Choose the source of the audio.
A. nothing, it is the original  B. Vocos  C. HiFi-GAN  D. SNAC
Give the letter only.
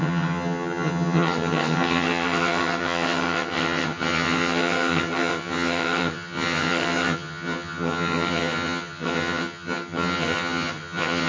C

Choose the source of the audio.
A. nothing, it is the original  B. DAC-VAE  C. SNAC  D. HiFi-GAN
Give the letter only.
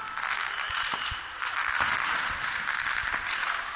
A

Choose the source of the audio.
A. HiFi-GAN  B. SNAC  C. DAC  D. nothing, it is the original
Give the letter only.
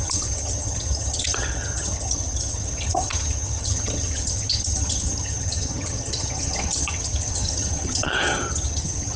A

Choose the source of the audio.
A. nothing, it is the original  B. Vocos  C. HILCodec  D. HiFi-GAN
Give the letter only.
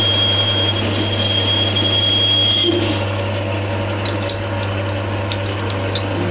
A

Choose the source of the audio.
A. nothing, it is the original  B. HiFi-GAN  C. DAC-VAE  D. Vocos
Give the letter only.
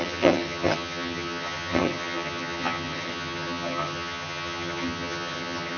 B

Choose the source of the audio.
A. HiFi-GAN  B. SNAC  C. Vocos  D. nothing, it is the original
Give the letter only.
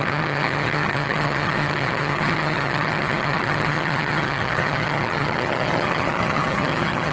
A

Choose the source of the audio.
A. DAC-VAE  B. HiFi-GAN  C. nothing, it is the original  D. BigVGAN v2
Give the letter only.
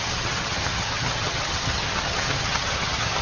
B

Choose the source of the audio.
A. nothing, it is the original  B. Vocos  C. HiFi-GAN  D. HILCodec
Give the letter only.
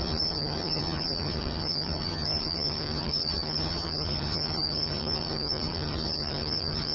C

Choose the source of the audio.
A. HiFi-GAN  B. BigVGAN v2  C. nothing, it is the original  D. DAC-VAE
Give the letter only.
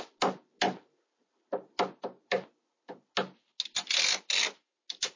C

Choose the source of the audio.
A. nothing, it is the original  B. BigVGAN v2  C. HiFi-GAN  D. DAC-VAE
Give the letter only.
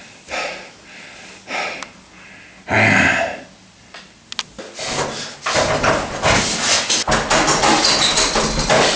A